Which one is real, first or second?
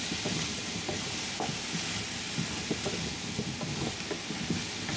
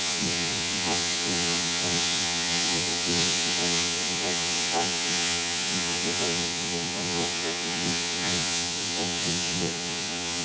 first